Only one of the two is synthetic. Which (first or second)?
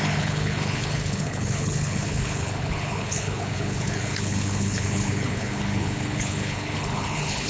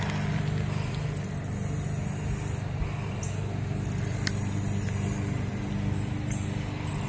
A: first